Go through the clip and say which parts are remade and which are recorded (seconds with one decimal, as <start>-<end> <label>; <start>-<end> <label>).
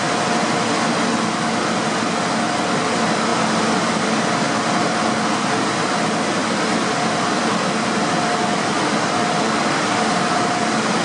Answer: 0.0-11.0 recorded